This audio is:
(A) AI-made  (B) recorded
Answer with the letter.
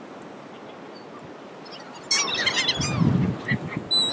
B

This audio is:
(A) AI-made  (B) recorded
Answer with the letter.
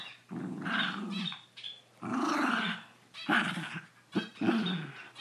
B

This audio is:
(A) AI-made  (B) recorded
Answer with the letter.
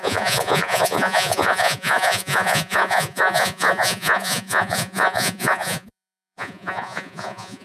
A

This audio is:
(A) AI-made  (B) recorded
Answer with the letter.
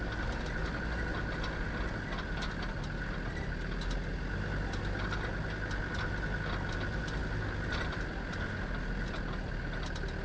B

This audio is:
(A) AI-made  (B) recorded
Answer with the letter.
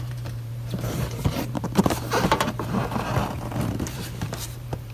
A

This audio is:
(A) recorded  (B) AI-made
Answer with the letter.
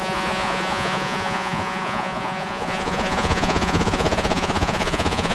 B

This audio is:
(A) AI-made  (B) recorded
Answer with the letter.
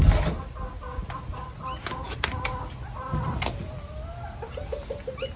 B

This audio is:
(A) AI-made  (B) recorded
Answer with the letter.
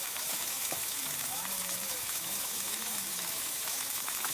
A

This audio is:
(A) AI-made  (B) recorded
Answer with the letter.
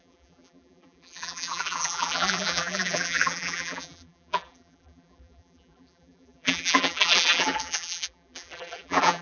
A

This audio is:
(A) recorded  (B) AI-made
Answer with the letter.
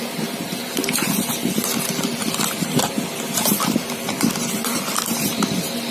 B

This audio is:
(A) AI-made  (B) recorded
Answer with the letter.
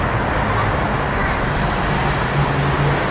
B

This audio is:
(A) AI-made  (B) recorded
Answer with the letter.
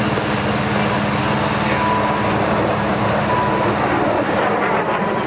B